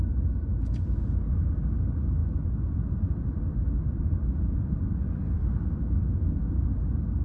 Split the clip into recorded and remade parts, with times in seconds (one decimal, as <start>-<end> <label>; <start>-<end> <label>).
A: 0.0-7.2 recorded